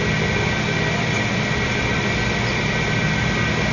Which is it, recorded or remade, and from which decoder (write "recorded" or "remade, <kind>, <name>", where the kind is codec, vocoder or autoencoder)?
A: recorded